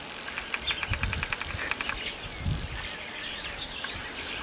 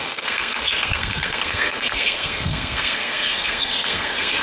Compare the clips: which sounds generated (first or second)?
second